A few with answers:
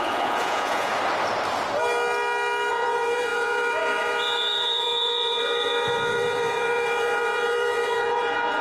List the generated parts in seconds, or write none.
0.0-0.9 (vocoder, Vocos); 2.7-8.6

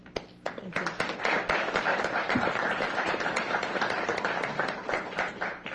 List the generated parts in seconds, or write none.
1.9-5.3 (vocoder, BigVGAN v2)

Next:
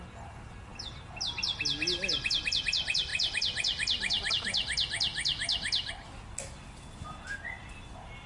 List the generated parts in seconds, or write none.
none

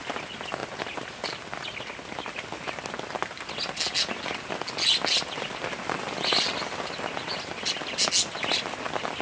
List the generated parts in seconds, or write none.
none

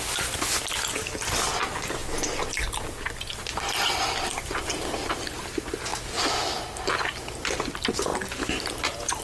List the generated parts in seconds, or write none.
none

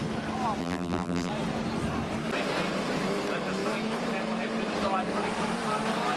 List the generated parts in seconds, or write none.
0.6-1.3 (vocoder, BigVGAN v2)

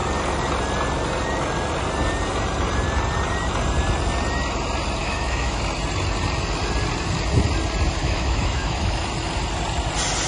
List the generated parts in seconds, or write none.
5.0-5.6 (autoencoder, DAC-VAE); 8.0-9.0

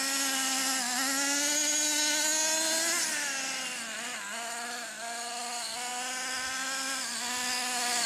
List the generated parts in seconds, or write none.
none